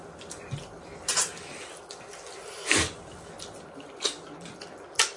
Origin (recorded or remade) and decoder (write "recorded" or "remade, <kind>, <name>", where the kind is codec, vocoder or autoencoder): recorded